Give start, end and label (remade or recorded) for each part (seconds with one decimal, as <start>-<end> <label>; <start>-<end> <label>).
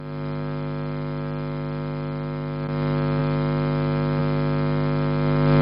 0.0-5.6 recorded